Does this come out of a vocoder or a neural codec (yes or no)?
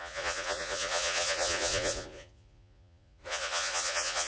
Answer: yes